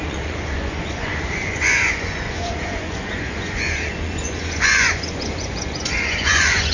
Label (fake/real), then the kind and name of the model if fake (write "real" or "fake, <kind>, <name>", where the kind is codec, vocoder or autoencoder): fake, vocoder, Vocos